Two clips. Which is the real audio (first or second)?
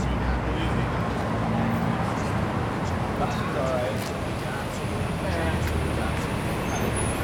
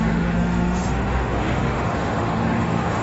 first